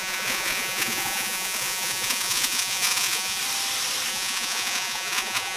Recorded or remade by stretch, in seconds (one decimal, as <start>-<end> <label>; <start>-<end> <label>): 0.0-3.4 remade; 3.4-4.1 recorded; 4.1-5.6 remade